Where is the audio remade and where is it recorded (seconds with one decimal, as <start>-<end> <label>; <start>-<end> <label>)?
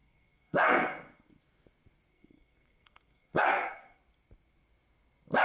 0.0-1.3 remade; 1.3-2.1 recorded; 2.1-4.0 remade; 4.0-5.4 recorded